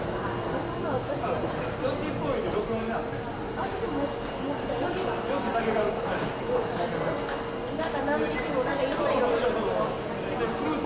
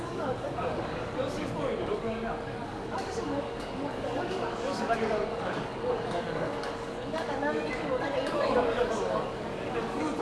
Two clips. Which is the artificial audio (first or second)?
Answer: second